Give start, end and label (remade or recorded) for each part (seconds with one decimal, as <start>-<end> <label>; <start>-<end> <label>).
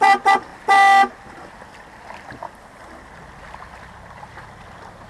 0.0-5.1 recorded